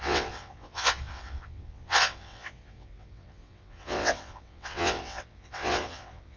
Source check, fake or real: fake